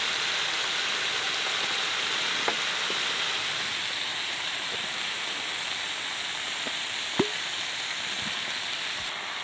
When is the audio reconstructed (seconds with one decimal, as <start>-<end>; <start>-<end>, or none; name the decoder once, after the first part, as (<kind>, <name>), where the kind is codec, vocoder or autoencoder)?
4.1-5.3 (vocoder, BigVGAN v2)